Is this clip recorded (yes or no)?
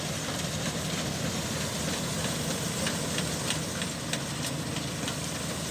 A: yes